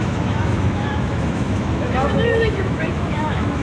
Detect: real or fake fake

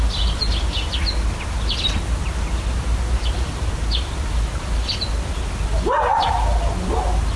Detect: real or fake real